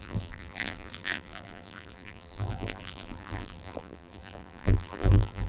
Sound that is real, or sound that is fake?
fake